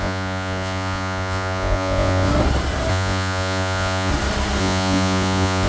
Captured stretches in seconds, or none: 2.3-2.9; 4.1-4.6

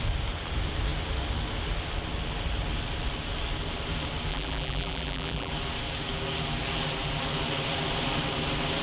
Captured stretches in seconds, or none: 0.0-4.3; 5.5-8.8

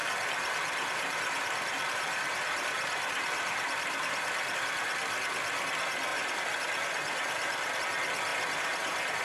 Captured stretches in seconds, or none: 4.6-6.1; 7.8-8.3

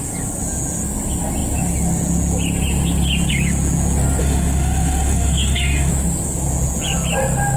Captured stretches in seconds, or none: 0.0-4.2; 5.9-7.6

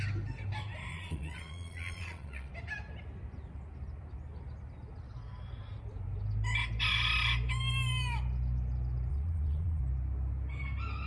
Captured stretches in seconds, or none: 0.0-0.9; 2.5-9.1; 9.8-11.1